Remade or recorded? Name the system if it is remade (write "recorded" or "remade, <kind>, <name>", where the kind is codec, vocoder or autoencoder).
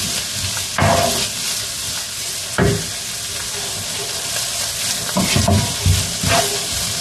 recorded